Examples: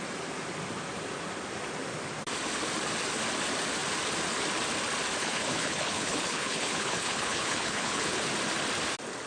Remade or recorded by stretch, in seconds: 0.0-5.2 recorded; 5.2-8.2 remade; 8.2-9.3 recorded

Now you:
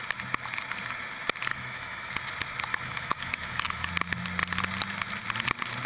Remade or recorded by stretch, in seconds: 0.0-1.5 recorded; 1.5-2.1 remade; 2.1-2.7 recorded; 2.7-3.9 remade; 3.9-5.9 recorded

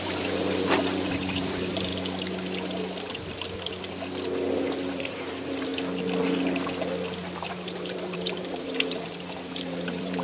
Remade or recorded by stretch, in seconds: 0.0-1.9 remade; 1.9-4.9 recorded; 4.9-5.7 remade; 5.7-7.4 recorded; 7.4-10.2 remade

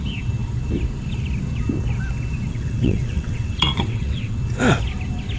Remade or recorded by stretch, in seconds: 0.0-2.5 recorded; 2.5-4.4 remade; 4.4-5.4 recorded